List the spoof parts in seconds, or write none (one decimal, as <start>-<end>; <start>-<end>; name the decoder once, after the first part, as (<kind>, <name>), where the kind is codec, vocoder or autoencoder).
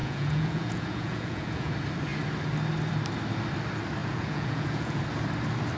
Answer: 0.0-1.7 (vocoder, Vocos); 4.0-5.0